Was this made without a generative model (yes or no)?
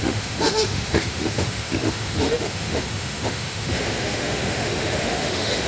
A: no